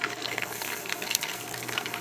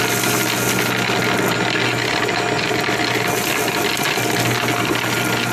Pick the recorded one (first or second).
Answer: second